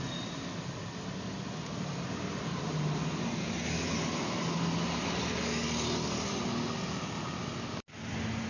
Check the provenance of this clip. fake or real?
real